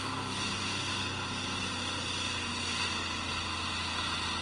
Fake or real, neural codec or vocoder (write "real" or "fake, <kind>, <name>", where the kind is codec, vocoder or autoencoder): real